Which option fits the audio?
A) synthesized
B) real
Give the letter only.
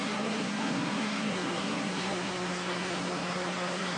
A